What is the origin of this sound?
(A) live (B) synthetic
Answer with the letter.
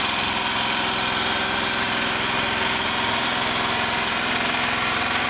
A